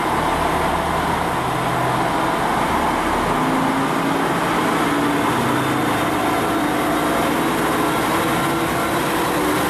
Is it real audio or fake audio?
real